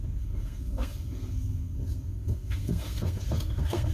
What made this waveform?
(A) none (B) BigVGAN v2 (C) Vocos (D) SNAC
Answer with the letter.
D